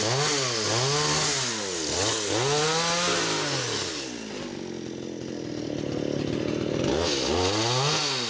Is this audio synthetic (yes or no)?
no